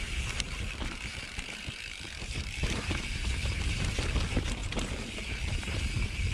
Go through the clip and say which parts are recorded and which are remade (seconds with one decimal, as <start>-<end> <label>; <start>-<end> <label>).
0.0-6.3 remade